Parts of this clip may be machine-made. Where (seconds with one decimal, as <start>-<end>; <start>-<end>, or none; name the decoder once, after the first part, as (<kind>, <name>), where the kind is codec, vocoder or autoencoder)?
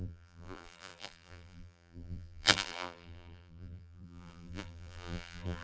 0.0-5.6 (vocoder, BigVGAN v2)